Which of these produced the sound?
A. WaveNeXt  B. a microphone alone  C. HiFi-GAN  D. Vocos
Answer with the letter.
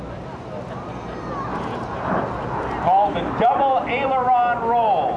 B